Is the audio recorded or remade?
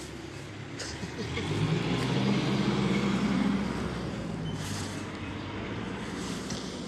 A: recorded